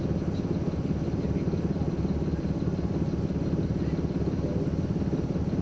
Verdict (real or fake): real